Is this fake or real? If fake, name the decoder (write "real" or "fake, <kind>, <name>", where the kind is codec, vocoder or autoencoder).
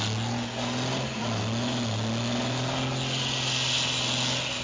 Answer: real